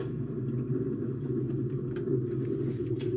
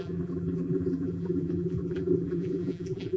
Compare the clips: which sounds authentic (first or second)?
first